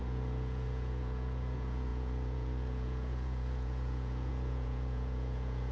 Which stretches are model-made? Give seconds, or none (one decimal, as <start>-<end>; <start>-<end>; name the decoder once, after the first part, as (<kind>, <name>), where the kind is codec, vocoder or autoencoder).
0.0-5.7 (vocoder, Vocos)